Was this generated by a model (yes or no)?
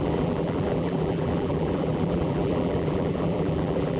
yes